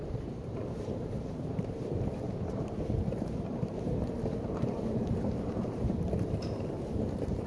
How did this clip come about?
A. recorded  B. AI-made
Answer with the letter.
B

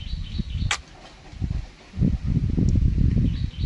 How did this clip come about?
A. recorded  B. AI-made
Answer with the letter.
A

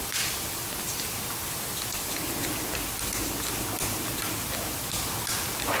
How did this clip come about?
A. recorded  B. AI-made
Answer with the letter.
A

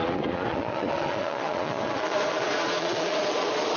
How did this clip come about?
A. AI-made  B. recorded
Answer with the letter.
A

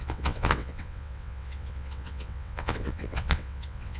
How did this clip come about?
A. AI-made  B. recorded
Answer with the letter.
A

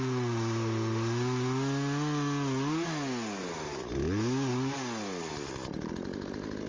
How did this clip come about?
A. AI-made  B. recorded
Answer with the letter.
B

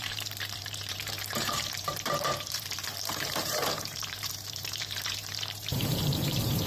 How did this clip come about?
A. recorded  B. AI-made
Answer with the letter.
B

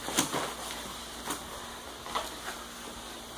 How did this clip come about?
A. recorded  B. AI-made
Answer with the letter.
A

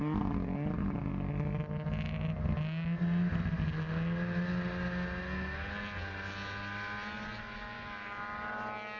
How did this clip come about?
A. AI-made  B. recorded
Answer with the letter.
B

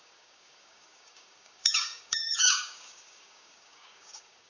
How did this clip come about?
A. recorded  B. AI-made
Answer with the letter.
B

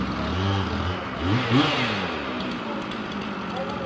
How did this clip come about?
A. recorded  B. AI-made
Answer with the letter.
A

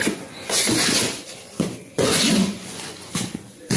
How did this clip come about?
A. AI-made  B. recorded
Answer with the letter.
A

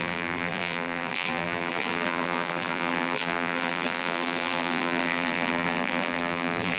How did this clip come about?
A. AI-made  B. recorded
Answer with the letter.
A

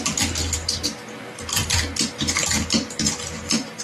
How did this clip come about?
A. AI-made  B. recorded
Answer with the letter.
B